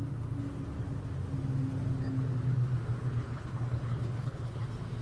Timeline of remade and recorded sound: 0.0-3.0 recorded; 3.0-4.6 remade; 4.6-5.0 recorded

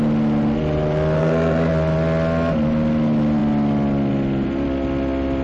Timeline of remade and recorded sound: 0.0-1.2 recorded; 1.2-1.7 remade; 1.7-5.4 recorded

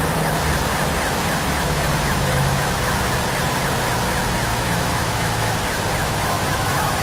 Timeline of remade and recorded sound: 0.0-1.4 recorded; 1.4-2.9 remade; 2.9-4.5 recorded; 4.5-5.5 remade; 5.5-6.0 recorded; 6.0-7.0 remade

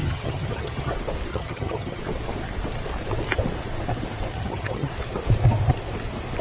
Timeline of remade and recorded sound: 0.0-0.9 remade; 0.9-1.3 recorded; 1.3-2.0 remade; 2.0-4.3 recorded; 4.3-4.9 remade; 4.9-6.4 recorded

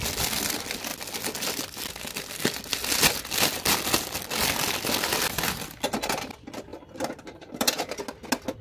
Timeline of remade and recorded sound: 0.0-6.7 recorded; 6.7-8.0 remade; 8.0-8.6 recorded

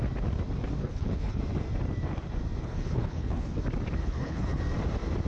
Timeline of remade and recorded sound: 0.0-0.8 recorded; 0.8-1.4 remade; 1.4-2.6 recorded; 2.6-3.6 remade; 3.6-4.0 recorded; 4.0-4.6 remade; 4.6-5.3 recorded